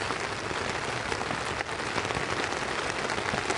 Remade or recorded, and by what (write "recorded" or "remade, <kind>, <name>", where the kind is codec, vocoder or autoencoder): recorded